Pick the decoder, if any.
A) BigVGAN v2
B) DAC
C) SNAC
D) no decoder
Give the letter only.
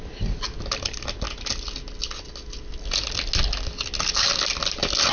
D